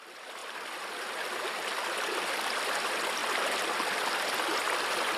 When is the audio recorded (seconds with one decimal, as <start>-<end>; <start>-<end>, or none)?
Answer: 3.2-4.4